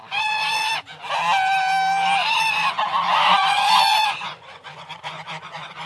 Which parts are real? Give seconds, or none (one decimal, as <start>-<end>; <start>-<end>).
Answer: 0.8-2.2